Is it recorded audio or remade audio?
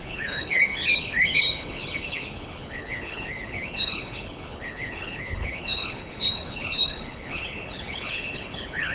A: remade